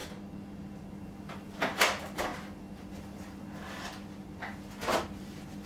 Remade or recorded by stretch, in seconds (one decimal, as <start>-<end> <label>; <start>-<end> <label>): 0.0-5.7 recorded